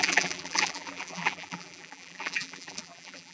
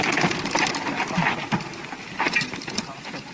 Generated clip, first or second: first